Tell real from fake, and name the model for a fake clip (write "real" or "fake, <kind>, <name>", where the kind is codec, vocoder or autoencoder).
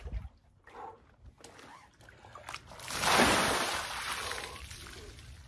real